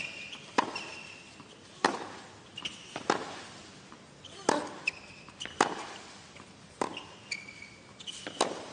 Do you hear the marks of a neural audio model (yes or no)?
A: no